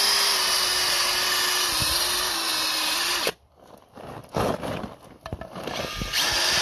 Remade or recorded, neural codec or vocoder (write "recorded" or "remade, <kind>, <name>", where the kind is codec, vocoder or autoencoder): recorded